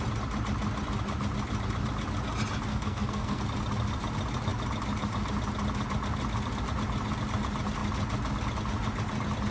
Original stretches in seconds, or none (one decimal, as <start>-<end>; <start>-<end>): 0.0-2.7; 3.4-9.5